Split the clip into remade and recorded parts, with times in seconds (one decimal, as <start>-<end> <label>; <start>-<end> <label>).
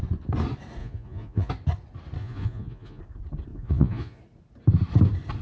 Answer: 0.0-0.8 recorded; 0.8-1.5 remade; 1.5-2.2 recorded; 2.2-3.0 remade; 3.0-3.5 recorded; 3.5-4.2 remade; 4.2-5.4 recorded